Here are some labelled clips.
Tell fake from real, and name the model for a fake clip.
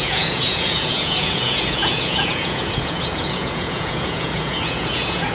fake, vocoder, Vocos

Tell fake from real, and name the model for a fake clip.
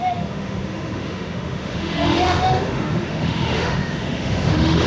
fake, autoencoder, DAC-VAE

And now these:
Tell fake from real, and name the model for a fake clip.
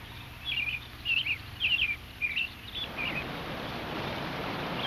fake, vocoder, BigVGAN v2